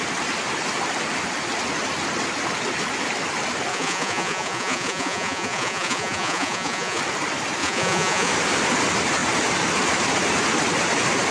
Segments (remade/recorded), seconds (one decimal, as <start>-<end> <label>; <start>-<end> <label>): 0.0-3.7 recorded; 3.7-7.0 remade; 7.0-7.6 recorded; 7.6-8.3 remade; 8.3-11.3 recorded